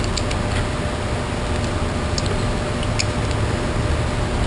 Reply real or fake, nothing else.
real